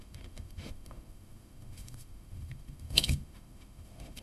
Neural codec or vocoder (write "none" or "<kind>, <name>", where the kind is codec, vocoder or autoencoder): autoencoder, DAC-VAE